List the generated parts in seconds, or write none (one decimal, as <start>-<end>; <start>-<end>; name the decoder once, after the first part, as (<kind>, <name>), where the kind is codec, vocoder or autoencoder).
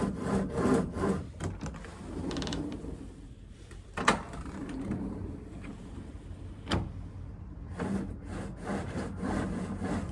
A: 2.5-6.0 (vocoder, BigVGAN v2)